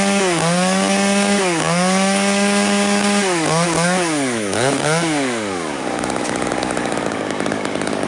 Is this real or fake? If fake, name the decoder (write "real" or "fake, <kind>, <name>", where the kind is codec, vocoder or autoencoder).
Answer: fake, codec, DAC